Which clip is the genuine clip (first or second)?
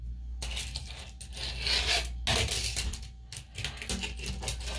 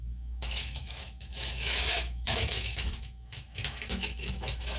first